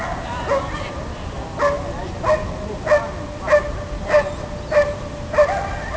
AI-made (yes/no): no